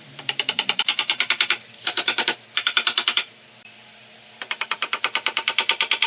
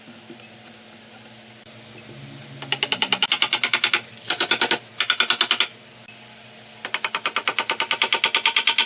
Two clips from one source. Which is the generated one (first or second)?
first